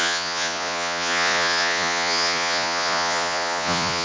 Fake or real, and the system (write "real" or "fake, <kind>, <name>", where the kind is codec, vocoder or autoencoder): fake, vocoder, Vocos